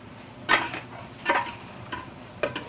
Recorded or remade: recorded